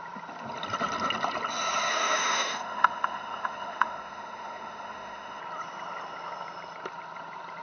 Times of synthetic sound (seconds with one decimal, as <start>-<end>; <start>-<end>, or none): 1.9-5.4